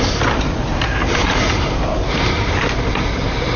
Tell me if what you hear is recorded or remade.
remade